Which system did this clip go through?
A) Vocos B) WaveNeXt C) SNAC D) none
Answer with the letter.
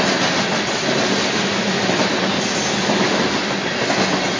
D